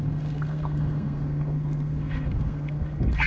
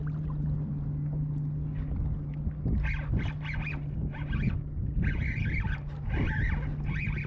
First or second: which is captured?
second